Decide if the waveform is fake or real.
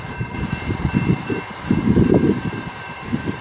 fake